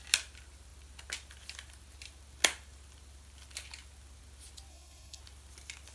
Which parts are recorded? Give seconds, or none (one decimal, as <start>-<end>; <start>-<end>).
0.0-4.7; 5.2-5.9